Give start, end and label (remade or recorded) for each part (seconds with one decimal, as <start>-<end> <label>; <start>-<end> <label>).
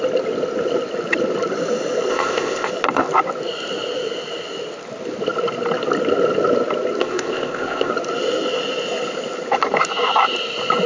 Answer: 0.0-2.1 recorded; 2.1-2.7 remade; 2.7-7.0 recorded; 7.0-7.9 remade; 7.9-10.9 recorded